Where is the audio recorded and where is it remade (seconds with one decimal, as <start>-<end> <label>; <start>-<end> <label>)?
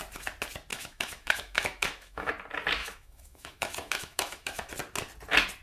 0.0-0.7 recorded; 0.7-2.3 remade; 2.3-2.8 recorded; 2.8-4.7 remade; 4.7-5.6 recorded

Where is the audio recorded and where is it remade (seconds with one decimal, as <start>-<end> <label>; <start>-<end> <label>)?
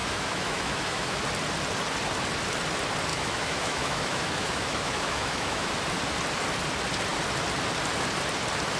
0.0-1.2 remade; 1.2-3.1 recorded; 3.1-5.7 remade; 5.7-8.8 recorded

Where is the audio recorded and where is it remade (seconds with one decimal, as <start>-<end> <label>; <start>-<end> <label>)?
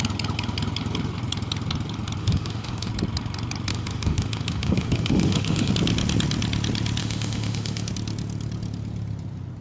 0.0-2.2 recorded; 2.2-2.9 remade; 2.9-3.7 recorded; 3.7-5.7 remade; 5.7-7.0 recorded; 7.0-7.9 remade; 7.9-9.6 recorded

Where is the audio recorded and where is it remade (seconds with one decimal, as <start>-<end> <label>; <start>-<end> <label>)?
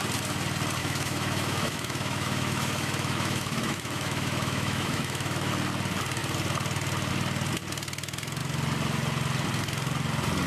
0.0-0.8 recorded; 0.8-5.5 remade; 5.5-10.5 recorded